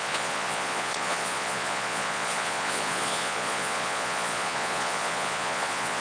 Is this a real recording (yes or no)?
no